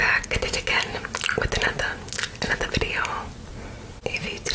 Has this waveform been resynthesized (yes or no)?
no